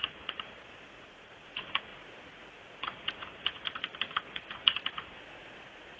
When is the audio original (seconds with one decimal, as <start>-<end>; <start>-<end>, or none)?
3.6-4.2